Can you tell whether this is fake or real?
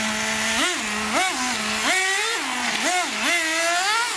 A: real